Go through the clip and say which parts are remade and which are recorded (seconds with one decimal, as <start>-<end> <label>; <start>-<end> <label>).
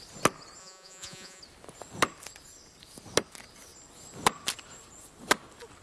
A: 0.0-0.6 recorded; 0.6-1.4 remade; 1.4-5.8 recorded